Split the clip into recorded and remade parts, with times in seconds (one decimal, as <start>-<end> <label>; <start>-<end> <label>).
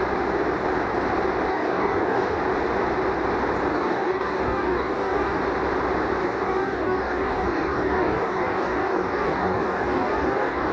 0.0-1.5 recorded; 1.5-2.4 remade; 2.4-3.7 recorded; 3.7-5.4 remade; 5.4-6.2 recorded; 6.2-10.7 remade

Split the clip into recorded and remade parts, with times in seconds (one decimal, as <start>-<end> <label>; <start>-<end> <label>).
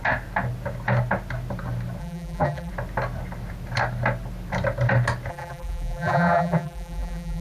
0.0-2.0 recorded; 2.0-2.7 remade; 2.7-5.3 recorded; 5.3-7.4 remade